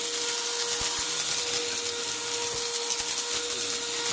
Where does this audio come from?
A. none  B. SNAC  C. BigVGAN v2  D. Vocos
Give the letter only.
A